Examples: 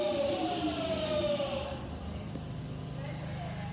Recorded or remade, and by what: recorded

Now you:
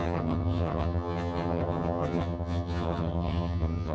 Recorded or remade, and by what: remade, vocoder, HiFi-GAN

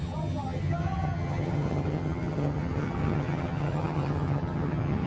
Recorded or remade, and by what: remade, vocoder, HiFi-GAN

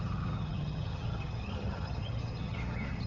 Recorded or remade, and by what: remade, vocoder, HiFi-GAN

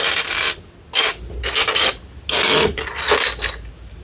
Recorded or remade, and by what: recorded